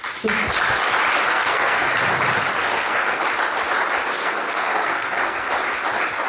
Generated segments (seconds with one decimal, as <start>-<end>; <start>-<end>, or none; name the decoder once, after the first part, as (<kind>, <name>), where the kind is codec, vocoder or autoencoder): 1.3-1.9 (codec, SNAC); 2.6-3.2; 4.2-5.5